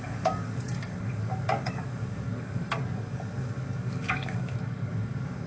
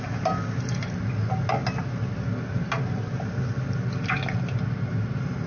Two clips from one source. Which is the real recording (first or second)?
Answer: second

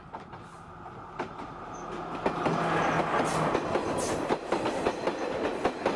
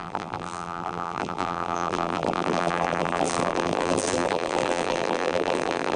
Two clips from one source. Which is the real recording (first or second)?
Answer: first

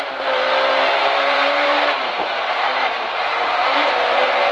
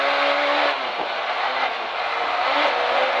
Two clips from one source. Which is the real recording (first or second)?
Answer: second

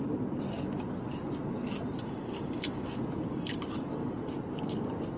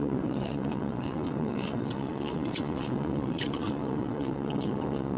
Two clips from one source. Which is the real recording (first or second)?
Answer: first